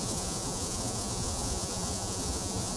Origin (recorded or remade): remade